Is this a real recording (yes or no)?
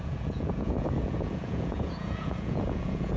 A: no